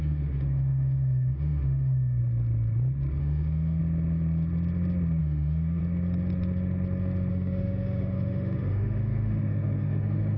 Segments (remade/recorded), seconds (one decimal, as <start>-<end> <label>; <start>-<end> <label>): 0.0-2.2 remade; 2.2-3.2 recorded; 3.2-3.8 remade; 3.8-5.2 recorded; 5.2-5.8 remade; 5.8-7.3 recorded; 7.3-10.4 remade